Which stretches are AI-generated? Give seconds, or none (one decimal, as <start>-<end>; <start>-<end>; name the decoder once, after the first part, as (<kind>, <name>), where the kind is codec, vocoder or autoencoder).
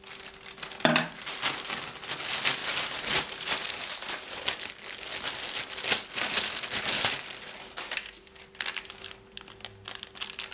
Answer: 2.6-4.3 (vocoder, BigVGAN v2)